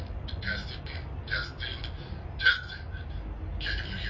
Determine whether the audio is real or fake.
real